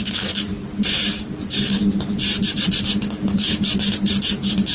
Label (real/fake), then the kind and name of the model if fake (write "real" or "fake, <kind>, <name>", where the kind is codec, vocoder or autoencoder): real